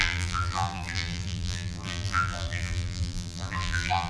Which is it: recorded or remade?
remade